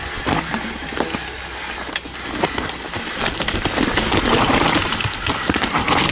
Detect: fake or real real